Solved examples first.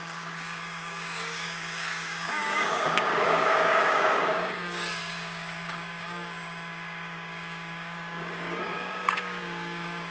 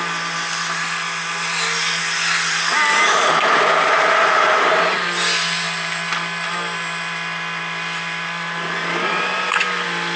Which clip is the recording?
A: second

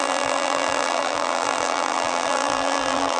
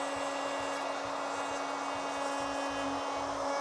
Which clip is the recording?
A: second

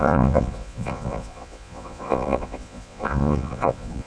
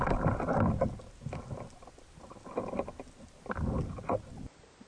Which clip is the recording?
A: second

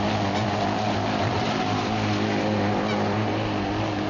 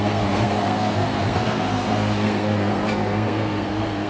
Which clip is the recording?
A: first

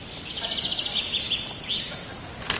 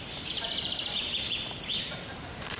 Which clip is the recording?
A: first